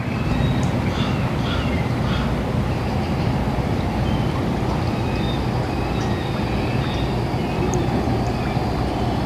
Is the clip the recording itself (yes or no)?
yes